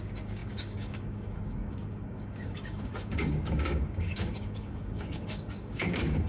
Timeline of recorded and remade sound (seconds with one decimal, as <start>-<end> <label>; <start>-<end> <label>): 0.0-6.3 remade